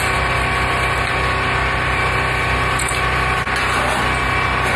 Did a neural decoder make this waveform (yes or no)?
no